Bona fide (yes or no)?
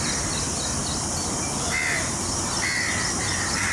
yes